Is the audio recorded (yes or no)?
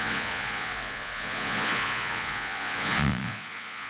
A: no